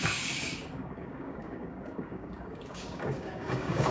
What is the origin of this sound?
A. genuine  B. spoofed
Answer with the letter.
B